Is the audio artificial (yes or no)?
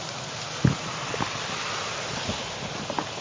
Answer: no